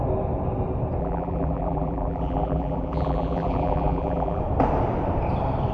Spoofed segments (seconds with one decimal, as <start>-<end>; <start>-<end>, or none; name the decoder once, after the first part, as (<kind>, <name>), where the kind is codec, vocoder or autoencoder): 1.0-4.4 (vocoder, BigVGAN v2)